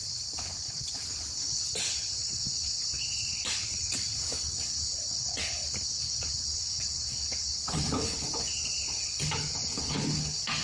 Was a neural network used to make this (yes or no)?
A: yes